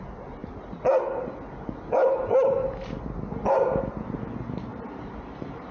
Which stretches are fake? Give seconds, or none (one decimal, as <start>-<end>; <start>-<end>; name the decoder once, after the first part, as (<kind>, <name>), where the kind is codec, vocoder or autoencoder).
4.7-5.7 (vocoder, BigVGAN v2)